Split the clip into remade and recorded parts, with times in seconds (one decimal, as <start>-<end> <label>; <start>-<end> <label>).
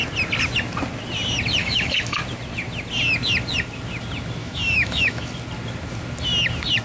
0.0-1.6 recorded; 1.6-2.2 remade; 2.2-4.4 recorded; 4.4-5.3 remade; 5.3-6.8 recorded